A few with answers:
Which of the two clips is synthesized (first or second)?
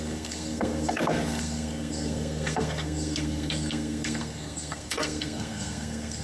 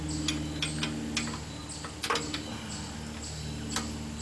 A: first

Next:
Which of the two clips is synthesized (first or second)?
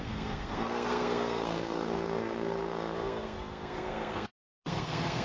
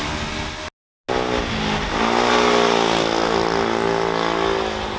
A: first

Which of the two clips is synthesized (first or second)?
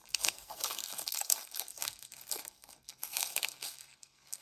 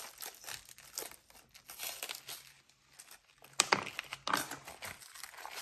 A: first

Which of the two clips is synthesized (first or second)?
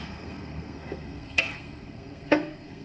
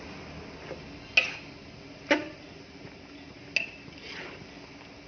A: first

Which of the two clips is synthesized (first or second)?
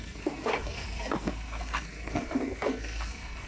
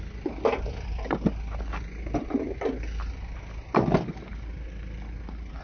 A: first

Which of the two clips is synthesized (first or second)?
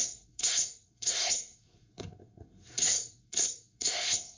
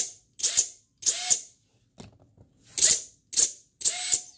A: first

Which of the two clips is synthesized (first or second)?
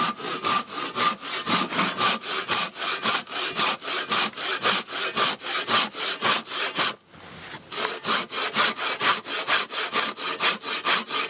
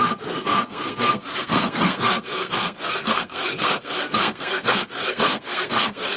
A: second